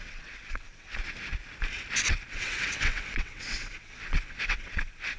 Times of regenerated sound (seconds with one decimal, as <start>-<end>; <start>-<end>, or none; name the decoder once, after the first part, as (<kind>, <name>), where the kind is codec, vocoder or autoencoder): 0.0-0.9 (vocoder, WaveNeXt); 2.1-5.2